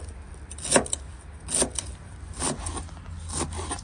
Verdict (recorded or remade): recorded